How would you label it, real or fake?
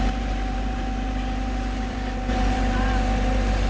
fake